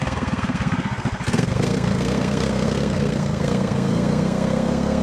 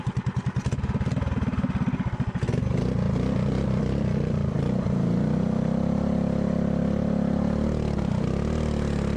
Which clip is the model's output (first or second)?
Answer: first